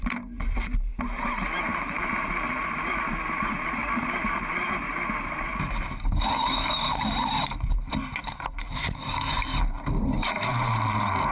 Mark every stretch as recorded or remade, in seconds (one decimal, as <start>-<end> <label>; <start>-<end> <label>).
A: 0.0-11.3 remade